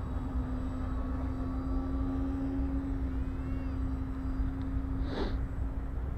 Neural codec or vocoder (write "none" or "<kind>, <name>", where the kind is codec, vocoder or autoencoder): none